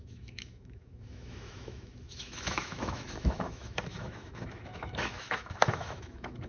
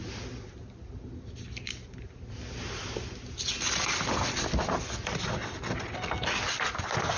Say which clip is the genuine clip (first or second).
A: second